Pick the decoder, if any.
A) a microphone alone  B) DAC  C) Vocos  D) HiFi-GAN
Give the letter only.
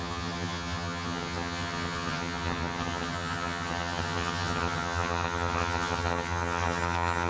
D